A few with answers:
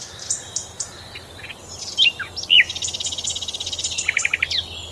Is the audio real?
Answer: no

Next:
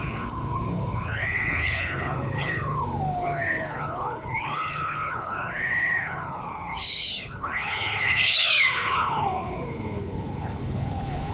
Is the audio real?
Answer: no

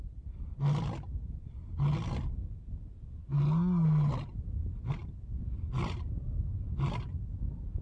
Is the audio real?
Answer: yes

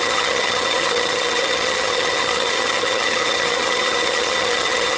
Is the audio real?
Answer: no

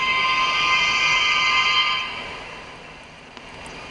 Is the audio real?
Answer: yes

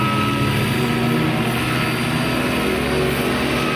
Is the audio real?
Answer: yes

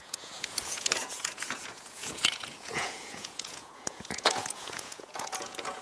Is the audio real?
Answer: no